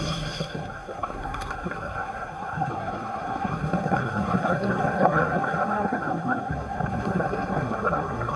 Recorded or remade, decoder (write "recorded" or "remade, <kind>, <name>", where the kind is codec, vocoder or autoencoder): remade, codec, SNAC